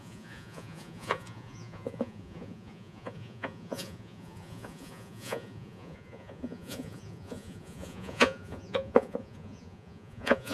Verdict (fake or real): fake